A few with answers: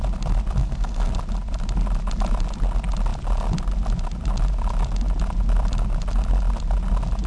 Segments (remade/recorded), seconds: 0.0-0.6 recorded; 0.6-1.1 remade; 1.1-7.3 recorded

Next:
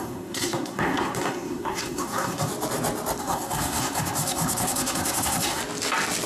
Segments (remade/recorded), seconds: 0.0-2.5 remade; 2.5-3.2 recorded; 3.2-5.6 remade; 5.6-6.3 recorded

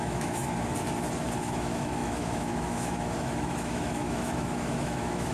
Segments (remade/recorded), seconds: 0.0-0.4 remade; 0.4-1.4 recorded; 1.4-5.3 remade

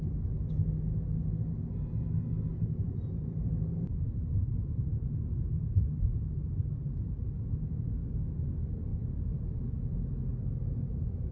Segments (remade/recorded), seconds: 0.0-2.5 recorded; 2.5-7.7 remade; 7.7-8.9 recorded; 8.9-9.6 remade; 9.6-10.3 recorded; 10.3-11.3 remade

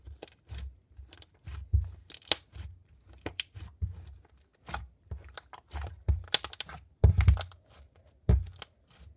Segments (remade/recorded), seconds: 0.0-9.2 recorded